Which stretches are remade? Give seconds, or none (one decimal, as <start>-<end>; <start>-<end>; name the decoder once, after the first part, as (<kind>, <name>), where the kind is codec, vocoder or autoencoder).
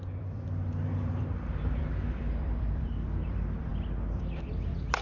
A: 0.0-5.0 (vocoder, BigVGAN v2)